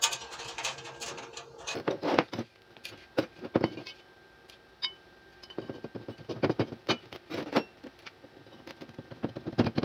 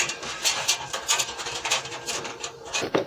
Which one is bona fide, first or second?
first